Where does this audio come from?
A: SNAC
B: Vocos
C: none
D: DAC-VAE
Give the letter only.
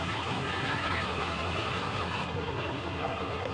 A